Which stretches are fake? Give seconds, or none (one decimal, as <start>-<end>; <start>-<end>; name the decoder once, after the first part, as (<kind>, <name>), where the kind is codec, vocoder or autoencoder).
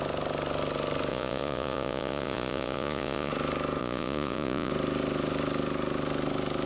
1.1-3.3 (vocoder, Vocos); 3.8-4.7